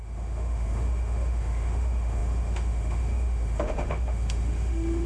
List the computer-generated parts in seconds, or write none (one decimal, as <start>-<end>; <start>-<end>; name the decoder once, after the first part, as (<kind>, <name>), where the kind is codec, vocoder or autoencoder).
0.0-5.1 (autoencoder, DAC-VAE)